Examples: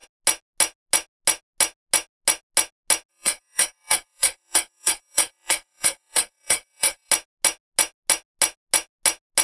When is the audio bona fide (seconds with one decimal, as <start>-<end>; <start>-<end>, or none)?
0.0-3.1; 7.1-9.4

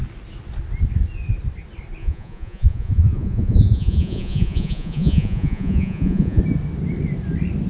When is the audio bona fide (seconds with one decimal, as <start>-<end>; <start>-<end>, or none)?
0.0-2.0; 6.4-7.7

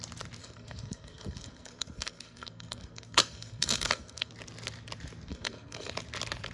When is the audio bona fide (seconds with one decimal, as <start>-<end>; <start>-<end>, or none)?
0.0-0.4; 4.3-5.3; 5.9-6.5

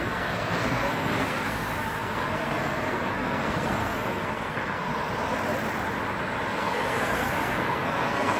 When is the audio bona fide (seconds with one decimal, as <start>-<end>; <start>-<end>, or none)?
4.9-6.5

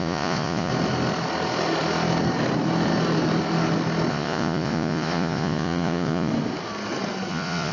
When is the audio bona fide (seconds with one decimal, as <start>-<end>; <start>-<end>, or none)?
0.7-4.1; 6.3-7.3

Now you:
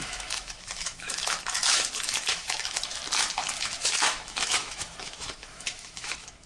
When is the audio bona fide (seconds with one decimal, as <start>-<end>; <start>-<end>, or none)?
3.0-3.6

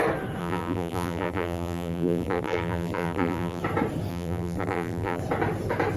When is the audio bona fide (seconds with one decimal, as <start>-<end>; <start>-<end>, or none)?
0.0-0.4; 3.6-4.1; 5.2-6.0

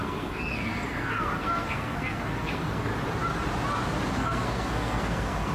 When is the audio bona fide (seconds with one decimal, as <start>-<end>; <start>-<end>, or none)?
2.9-4.1